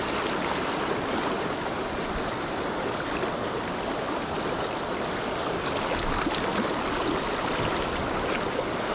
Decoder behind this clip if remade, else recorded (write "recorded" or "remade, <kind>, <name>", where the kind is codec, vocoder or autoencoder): recorded